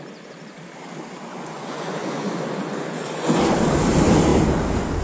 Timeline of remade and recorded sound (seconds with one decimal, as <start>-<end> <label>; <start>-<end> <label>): 0.0-1.3 recorded; 1.3-3.4 remade; 3.4-5.0 recorded